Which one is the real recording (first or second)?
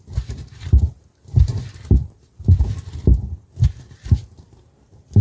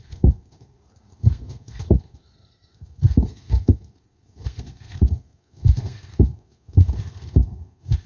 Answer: first